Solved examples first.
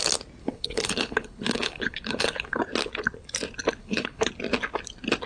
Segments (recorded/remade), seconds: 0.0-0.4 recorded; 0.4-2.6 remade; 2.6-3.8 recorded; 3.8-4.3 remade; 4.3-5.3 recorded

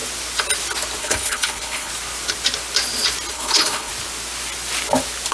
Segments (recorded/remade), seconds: 0.0-1.0 recorded; 1.0-1.9 remade; 1.9-3.3 recorded; 3.3-3.9 remade; 3.9-5.3 recorded

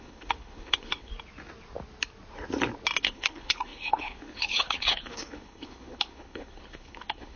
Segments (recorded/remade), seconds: 0.0-1.1 remade; 1.1-3.0 recorded; 3.0-7.4 remade

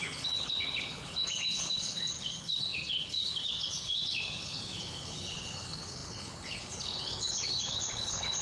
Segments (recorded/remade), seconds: 0.0-8.4 remade

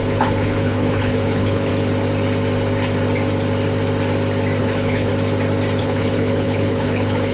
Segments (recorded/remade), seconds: 0.0-1.7 remade; 1.7-4.6 recorded; 4.6-5.1 remade; 5.1-5.8 recorded; 5.8-7.3 remade

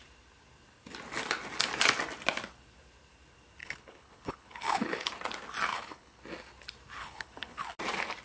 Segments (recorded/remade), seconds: 0.0-3.6 recorded; 3.6-5.1 remade; 5.1-5.7 recorded; 5.7-6.2 remade; 6.2-7.0 recorded; 7.0-7.6 remade; 7.6-8.2 recorded